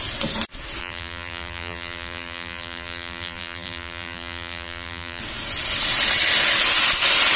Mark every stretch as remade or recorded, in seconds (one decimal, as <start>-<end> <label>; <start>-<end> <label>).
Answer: 0.0-0.8 recorded; 0.8-5.2 remade; 5.2-7.4 recorded